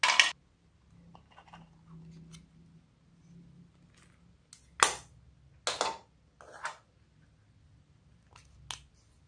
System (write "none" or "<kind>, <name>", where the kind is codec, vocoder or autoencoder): none